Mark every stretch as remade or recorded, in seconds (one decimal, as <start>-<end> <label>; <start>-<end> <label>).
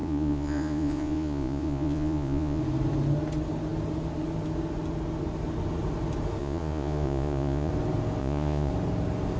0.0-2.6 remade; 2.6-6.4 recorded; 6.4-7.7 remade; 7.7-8.2 recorded; 8.2-8.7 remade; 8.7-9.4 recorded